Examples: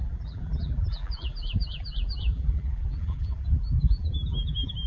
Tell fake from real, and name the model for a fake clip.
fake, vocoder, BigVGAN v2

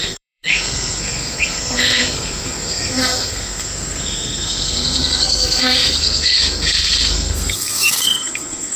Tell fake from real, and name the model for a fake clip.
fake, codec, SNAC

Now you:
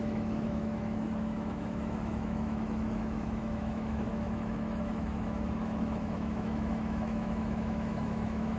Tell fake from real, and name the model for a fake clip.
fake, autoencoder, DAC-VAE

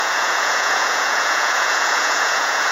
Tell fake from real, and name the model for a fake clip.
fake, vocoder, Vocos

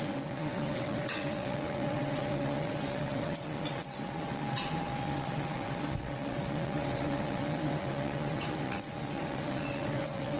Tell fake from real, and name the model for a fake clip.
fake, vocoder, WaveNeXt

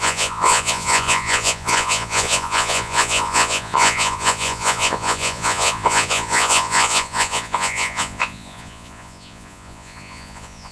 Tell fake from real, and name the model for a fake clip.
fake, vocoder, Vocos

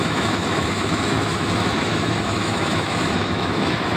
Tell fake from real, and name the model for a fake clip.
fake, autoencoder, DAC-VAE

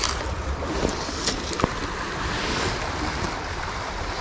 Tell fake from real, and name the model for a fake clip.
fake, vocoder, BigVGAN v2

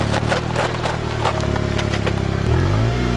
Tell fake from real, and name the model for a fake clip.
real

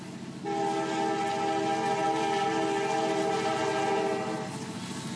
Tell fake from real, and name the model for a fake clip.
real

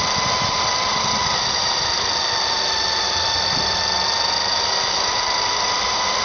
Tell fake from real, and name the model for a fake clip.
fake, vocoder, BigVGAN v2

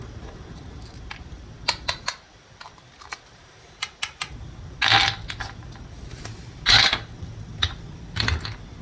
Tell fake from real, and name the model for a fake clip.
real